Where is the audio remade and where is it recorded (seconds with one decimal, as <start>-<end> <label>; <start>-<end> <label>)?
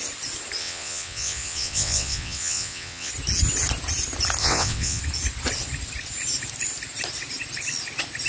0.0-0.6 recorded; 0.6-3.1 remade; 3.1-4.4 recorded; 4.4-5.0 remade; 5.0-8.3 recorded